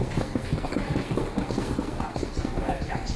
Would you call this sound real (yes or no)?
no